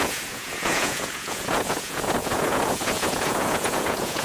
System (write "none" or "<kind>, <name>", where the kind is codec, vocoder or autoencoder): vocoder, Vocos